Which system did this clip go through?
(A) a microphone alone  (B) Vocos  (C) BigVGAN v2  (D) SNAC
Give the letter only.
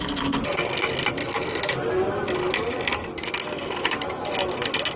A